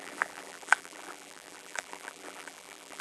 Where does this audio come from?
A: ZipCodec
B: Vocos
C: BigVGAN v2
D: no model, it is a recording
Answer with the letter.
C